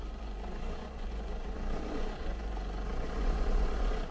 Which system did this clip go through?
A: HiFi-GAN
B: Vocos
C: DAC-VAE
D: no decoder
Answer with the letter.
B